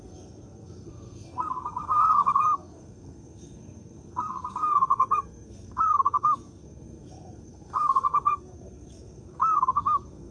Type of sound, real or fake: fake